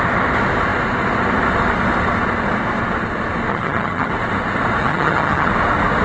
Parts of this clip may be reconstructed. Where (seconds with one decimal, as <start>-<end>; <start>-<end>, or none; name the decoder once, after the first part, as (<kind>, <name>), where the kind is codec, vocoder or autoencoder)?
3.5-4.1 (vocoder, HiFi-GAN); 4.8-5.5